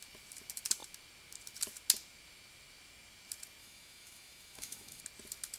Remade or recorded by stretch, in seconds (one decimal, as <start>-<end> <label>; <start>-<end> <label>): 0.0-3.6 recorded; 3.6-5.0 remade; 5.0-5.6 recorded